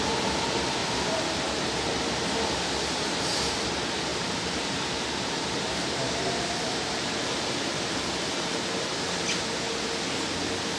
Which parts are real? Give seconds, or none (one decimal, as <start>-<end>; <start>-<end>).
0.0-0.8; 1.4-4.1; 8.6-10.8